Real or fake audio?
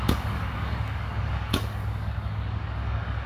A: fake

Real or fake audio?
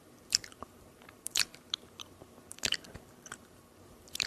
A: fake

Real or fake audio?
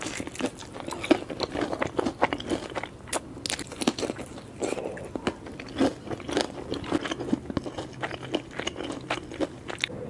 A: real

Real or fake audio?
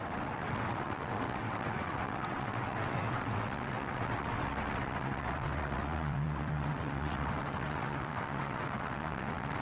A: fake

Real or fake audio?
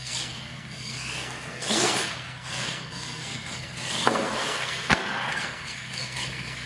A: fake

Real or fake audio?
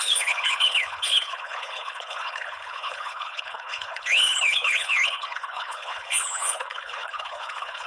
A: fake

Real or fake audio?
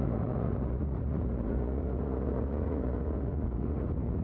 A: fake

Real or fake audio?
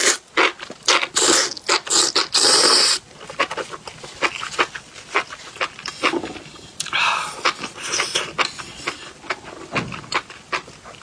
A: real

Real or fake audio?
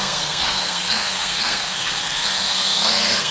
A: fake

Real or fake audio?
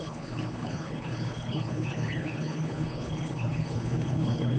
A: fake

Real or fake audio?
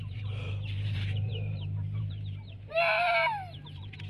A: fake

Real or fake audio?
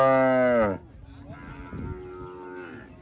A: real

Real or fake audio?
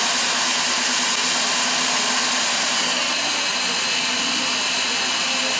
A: real